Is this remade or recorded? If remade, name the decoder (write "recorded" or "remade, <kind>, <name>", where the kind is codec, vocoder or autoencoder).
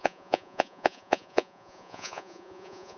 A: remade, vocoder, Vocos